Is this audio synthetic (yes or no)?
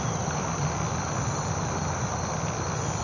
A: no